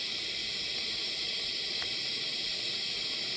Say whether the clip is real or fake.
real